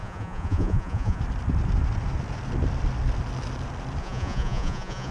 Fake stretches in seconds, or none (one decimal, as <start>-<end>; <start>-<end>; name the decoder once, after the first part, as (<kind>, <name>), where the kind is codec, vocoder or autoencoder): 0.0-1.2 (vocoder, Vocos); 4.0-5.1